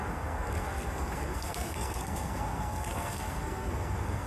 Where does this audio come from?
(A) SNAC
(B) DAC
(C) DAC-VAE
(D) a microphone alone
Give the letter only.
A